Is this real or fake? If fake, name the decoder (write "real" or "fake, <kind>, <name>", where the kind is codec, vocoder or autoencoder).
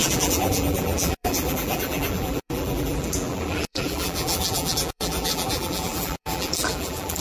fake, vocoder, BigVGAN v2